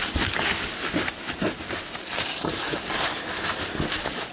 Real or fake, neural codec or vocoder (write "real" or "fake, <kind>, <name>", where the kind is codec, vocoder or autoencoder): real